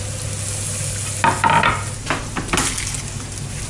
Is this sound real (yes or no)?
yes